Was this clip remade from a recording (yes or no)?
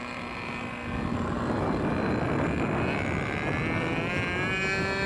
no